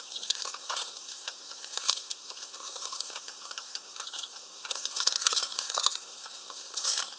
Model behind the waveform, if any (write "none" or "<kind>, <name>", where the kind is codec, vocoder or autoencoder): codec, SNAC